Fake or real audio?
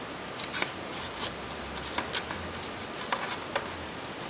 real